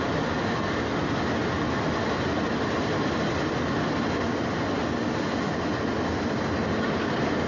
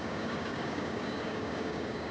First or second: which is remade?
second